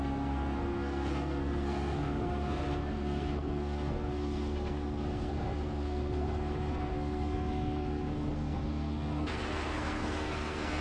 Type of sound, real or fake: fake